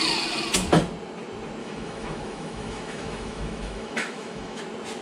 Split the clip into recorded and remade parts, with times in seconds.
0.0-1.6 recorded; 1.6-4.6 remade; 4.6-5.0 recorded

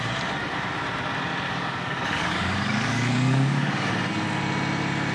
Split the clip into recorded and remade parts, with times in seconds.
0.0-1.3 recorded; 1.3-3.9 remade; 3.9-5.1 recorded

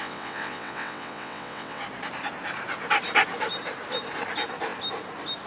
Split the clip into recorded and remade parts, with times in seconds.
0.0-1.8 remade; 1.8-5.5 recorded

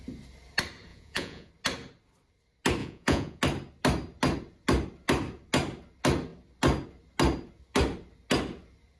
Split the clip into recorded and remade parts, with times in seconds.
0.0-0.9 recorded; 0.9-1.5 remade; 1.5-2.8 recorded; 2.8-3.4 remade; 3.4-9.0 recorded

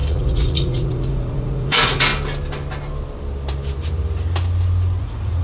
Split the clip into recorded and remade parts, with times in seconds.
0.0-2.1 remade; 2.1-5.0 recorded; 5.0-5.4 remade

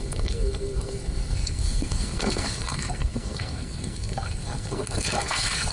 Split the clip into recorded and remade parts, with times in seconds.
0.0-5.7 remade